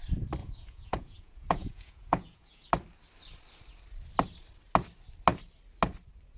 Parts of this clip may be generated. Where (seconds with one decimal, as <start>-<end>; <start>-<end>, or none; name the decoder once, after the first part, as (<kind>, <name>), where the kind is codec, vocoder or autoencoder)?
0.4-2.7 (vocoder, Vocos)